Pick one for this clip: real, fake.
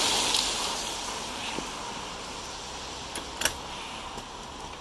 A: real